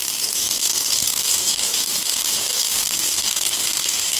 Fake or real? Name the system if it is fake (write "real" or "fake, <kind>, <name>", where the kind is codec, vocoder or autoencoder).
fake, codec, DAC